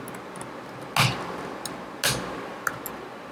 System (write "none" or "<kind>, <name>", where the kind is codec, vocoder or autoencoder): none